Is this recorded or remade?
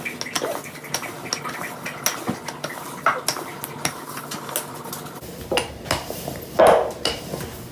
recorded